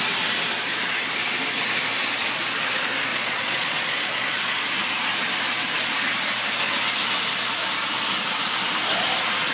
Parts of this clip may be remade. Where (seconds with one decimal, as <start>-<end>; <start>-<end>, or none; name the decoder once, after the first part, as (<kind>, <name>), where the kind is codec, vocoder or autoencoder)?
3.1-4.6 (vocoder, Vocos)